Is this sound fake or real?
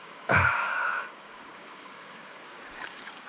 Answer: fake